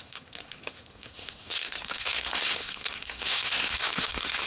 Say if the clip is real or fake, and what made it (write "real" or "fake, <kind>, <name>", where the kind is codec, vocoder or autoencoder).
fake, codec, SNAC